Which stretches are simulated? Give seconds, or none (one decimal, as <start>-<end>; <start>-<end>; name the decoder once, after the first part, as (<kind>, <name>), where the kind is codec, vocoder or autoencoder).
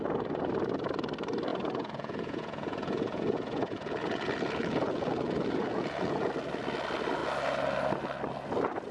1.5-6.3 (vocoder, Vocos)